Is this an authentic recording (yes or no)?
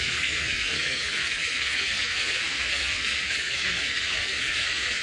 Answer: no